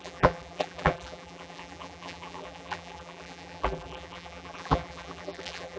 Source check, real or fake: fake